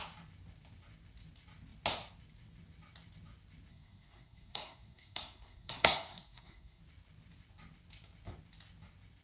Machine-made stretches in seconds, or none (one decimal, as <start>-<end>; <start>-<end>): 3.7-6.8